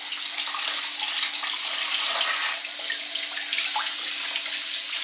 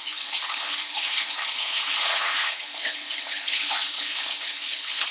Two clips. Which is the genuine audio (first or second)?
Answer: first